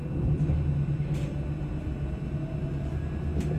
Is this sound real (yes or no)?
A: yes